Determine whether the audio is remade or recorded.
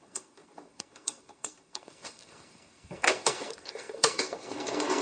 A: remade